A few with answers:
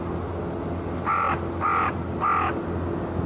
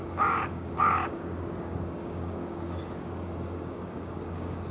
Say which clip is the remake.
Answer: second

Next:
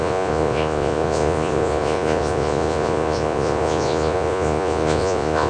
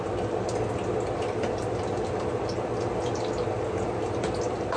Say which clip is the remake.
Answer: first